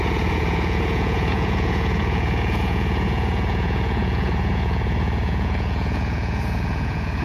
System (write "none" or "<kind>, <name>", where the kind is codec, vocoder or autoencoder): vocoder, Vocos